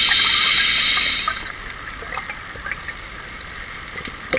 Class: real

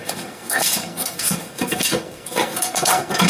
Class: fake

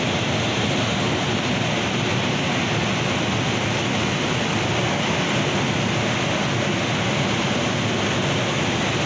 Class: real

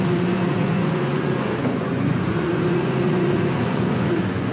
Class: fake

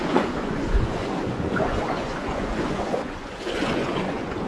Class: fake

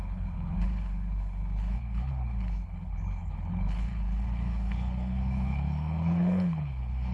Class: fake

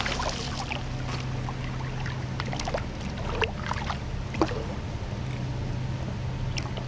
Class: real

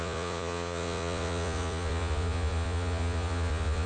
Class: fake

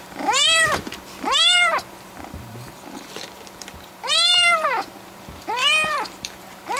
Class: fake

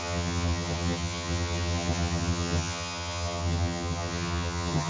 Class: fake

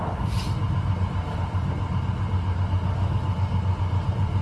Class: real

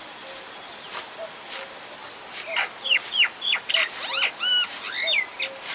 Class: real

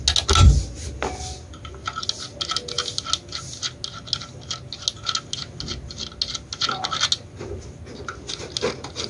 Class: real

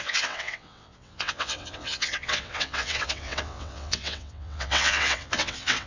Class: fake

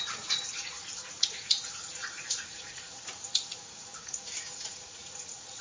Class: fake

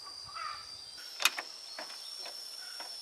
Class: real